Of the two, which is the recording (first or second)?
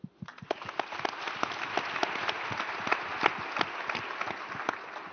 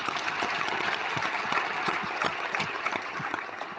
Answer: first